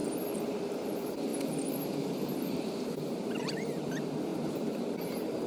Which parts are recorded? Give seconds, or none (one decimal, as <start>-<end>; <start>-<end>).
none